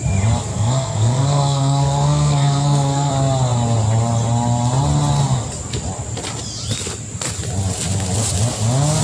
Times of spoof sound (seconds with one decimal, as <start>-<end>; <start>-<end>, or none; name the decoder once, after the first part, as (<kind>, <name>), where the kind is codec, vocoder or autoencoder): 0.5-3.1 (codec, SNAC)